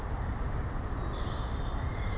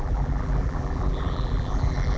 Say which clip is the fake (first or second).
second